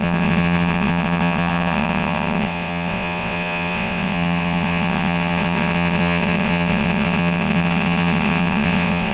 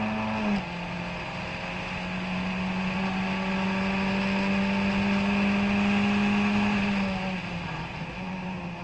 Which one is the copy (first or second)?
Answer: first